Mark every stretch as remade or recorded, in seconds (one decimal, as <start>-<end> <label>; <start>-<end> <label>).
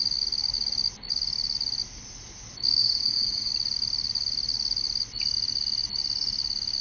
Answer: 0.0-2.8 recorded; 2.8-3.5 remade; 3.5-6.8 recorded